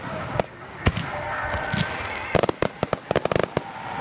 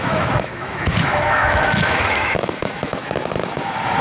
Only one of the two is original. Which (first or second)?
first